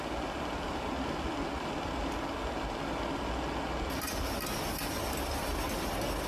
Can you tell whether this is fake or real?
real